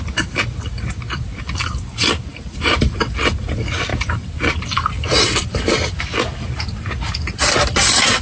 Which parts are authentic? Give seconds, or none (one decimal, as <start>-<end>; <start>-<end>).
0.0-2.3; 3.4-3.9; 6.0-8.2